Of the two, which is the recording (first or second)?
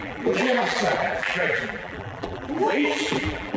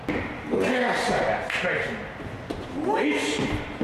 second